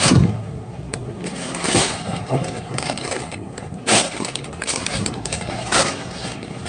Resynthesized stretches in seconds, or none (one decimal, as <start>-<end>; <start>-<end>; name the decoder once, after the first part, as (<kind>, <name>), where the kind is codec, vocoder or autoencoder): 0.0-6.7 (codec, SNAC)